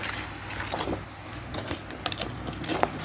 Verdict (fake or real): real